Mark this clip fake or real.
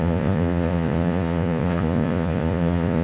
fake